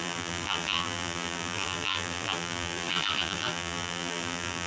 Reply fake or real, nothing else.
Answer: fake